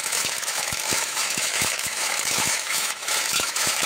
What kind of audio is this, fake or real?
fake